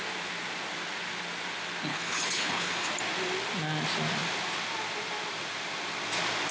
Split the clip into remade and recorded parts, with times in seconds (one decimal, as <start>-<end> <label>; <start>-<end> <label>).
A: 0.0-1.9 recorded; 1.9-2.9 remade; 2.9-6.5 recorded